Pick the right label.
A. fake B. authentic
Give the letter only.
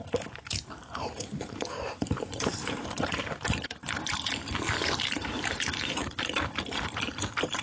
A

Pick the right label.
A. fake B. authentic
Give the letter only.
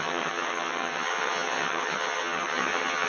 A